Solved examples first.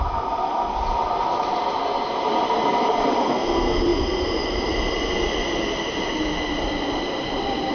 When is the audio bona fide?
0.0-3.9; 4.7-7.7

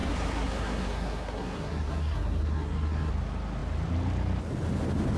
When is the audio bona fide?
3.1-5.2

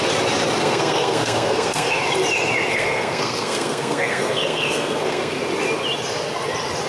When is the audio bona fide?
0.0-0.6; 2.0-2.7; 5.4-6.9

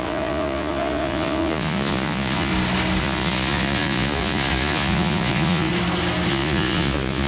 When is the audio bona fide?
2.5-3.0; 5.7-6.3